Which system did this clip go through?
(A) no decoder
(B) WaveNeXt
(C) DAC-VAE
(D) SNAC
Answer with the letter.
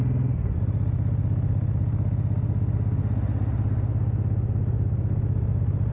A